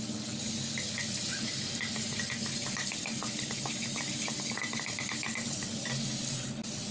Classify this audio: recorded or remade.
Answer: recorded